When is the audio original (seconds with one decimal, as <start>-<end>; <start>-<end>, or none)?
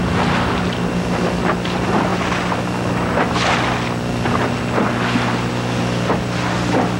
0.0-7.0